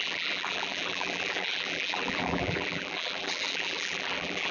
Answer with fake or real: fake